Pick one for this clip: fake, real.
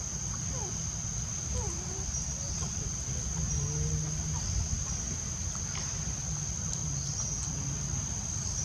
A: real